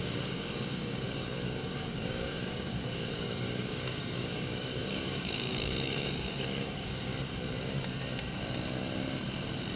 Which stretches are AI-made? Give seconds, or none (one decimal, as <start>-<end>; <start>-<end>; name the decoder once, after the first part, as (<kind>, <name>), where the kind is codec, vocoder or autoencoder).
0.0-7.1 (codec, DAC)